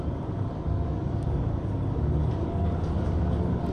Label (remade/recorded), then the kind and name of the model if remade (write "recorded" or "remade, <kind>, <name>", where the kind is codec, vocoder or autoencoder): remade, codec, DAC